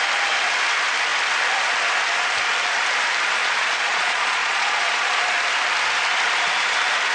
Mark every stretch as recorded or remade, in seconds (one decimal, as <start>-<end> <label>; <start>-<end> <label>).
0.0-3.4 recorded; 3.4-5.2 remade; 5.2-7.1 recorded

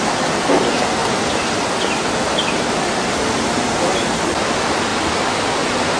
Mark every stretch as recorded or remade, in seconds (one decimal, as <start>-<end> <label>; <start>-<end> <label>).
0.0-6.0 recorded

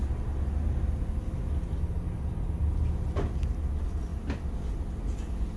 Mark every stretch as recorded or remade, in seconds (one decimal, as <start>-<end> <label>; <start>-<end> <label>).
0.0-5.6 recorded

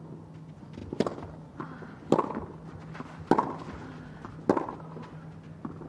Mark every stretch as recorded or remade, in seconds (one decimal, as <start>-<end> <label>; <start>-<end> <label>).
0.0-5.9 recorded